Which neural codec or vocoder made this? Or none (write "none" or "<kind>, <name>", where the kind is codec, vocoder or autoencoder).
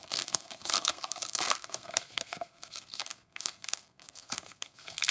codec, SNAC